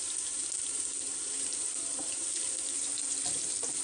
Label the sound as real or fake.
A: fake